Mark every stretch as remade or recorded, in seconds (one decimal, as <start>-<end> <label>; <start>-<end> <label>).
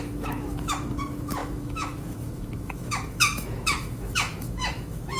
0.0-5.2 remade